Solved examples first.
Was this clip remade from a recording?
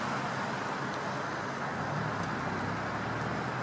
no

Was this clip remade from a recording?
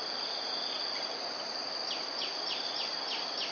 no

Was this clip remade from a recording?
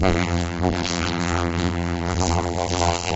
yes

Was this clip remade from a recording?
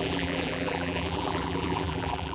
yes